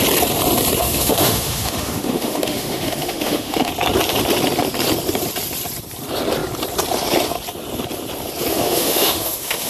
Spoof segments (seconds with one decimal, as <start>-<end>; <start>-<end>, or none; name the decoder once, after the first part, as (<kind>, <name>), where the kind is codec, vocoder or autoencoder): 0.8-3.7 (autoencoder, DAC-VAE); 8.5-9.7